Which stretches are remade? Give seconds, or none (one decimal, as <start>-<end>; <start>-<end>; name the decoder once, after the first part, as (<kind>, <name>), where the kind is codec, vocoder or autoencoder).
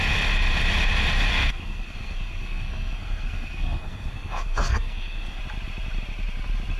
1.3-5.4 (codec, SNAC)